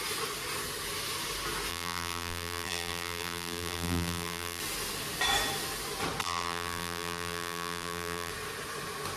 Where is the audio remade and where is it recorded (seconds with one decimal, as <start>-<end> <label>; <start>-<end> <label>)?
0.0-1.7 recorded; 1.7-4.6 remade; 4.6-6.2 recorded; 6.2-8.3 remade; 8.3-9.2 recorded